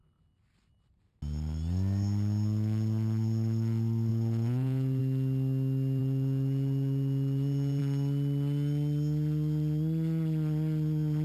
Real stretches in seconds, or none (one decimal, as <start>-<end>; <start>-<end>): 0.0-4.1; 5.0-6.0; 7.8-11.2